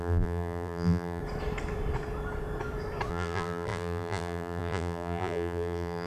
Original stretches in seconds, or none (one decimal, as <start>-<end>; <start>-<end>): 1.2-3.1